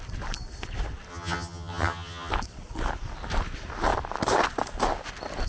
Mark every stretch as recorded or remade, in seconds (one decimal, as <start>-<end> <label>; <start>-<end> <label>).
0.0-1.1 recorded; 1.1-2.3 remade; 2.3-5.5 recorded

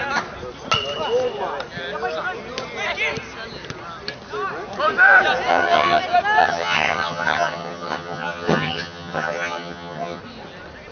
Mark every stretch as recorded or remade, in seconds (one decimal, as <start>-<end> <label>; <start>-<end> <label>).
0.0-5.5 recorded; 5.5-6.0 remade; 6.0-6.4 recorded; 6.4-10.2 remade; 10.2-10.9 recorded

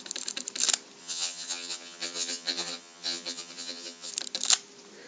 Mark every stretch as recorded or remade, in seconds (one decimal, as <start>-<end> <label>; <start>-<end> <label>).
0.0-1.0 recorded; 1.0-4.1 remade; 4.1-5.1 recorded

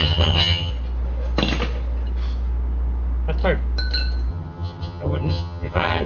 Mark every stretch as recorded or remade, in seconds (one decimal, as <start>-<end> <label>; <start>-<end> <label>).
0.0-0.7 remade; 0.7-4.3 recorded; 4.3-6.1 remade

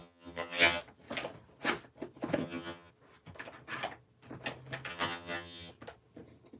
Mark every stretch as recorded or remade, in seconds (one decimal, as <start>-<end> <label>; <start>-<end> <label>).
0.0-0.8 remade; 0.8-2.4 recorded; 2.4-2.9 remade; 2.9-4.9 recorded; 4.9-5.7 remade; 5.7-6.6 recorded

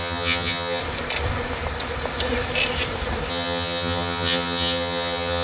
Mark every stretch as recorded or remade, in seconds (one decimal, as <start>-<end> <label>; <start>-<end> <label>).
0.0-0.8 remade; 0.8-3.3 recorded; 3.3-5.4 remade